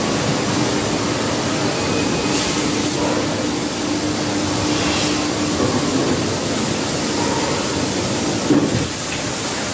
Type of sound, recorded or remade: recorded